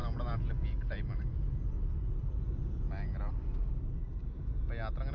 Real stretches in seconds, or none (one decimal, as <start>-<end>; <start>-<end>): 0.0-1.3; 4.4-5.1